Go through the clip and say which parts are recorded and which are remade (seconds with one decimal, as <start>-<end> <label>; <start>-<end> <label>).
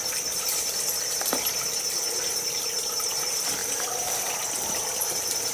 0.0-5.5 recorded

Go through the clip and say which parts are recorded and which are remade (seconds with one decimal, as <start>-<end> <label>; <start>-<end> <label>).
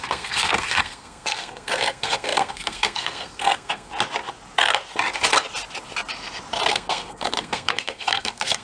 0.0-3.9 remade; 3.9-6.7 recorded; 6.7-8.6 remade